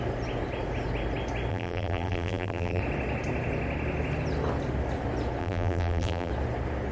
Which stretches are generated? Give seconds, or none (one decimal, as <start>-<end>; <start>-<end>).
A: 1.5-2.8; 5.4-6.3